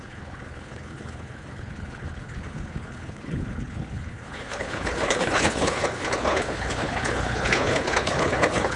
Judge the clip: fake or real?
fake